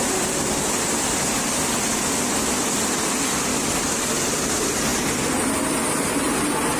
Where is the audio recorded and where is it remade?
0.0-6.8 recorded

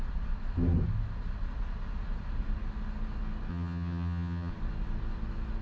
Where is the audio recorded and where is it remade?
0.0-3.5 recorded; 3.5-4.5 remade; 4.5-5.6 recorded